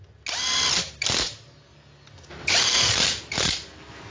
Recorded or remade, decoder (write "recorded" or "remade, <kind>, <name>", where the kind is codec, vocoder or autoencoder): recorded